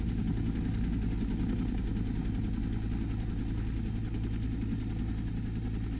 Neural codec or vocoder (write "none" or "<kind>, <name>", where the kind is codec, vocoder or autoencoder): none